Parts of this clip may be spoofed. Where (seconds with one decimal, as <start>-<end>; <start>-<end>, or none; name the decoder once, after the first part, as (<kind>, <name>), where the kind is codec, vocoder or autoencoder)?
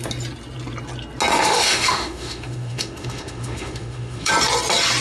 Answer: 1.3-4.3 (autoencoder, DAC-VAE)